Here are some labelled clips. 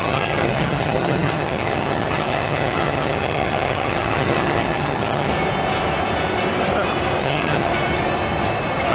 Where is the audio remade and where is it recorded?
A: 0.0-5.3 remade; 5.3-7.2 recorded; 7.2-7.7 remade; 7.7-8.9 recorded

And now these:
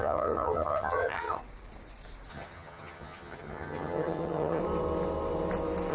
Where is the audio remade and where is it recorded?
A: 0.0-1.4 remade; 1.4-2.3 recorded; 2.3-4.6 remade; 4.6-5.9 recorded

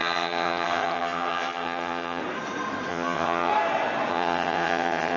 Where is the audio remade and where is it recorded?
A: 0.0-2.2 remade; 2.2-2.9 recorded; 2.9-3.5 remade; 3.5-4.1 recorded; 4.1-5.2 remade